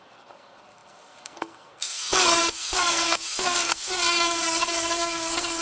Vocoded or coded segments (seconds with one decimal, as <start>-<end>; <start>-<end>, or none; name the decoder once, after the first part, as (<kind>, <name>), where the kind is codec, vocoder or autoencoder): 0.0-5.6 (codec, SNAC)